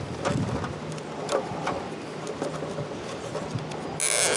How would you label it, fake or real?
real